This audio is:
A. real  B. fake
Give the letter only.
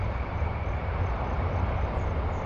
B